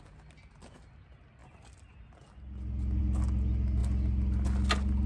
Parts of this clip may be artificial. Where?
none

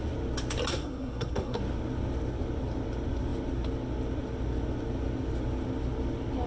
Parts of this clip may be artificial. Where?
0.7-1.6 (codec, SNAC)

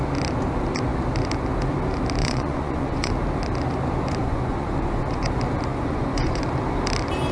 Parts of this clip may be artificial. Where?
2.2-3.1 (vocoder, Vocos); 4.2-5.2; 5.7-6.4

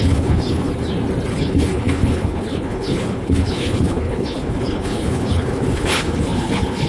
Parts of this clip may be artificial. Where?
0.0-0.7 (codec, HILCodec); 1.3-6.9